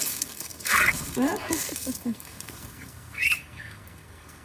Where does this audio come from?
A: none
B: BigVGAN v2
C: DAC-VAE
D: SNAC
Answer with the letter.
D